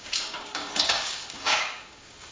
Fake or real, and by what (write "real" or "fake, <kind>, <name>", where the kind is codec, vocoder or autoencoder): fake, codec, DAC